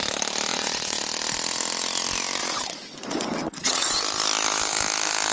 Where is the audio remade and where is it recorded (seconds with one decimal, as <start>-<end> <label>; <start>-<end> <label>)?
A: 0.0-0.5 recorded; 0.5-1.0 remade; 1.0-2.4 recorded; 2.4-4.0 remade; 4.0-5.3 recorded